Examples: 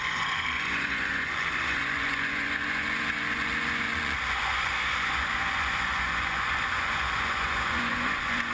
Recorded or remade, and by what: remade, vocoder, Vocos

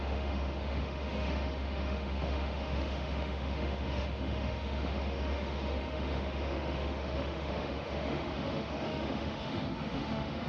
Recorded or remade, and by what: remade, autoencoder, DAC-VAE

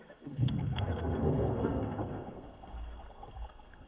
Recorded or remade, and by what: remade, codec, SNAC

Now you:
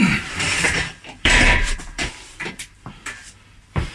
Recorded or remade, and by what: remade, vocoder, BigVGAN v2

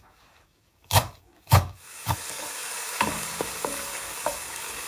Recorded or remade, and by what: remade, codec, DAC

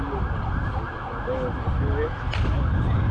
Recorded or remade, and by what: recorded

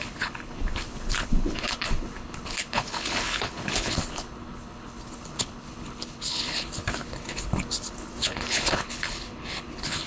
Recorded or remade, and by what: remade, codec, HILCodec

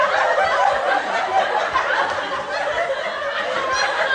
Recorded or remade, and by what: recorded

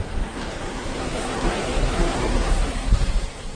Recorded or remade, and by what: remade, codec, SNAC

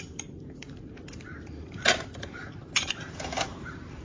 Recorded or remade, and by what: remade, vocoder, BigVGAN v2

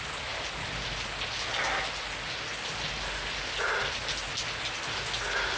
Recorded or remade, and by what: recorded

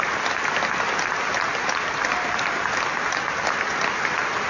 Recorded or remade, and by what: recorded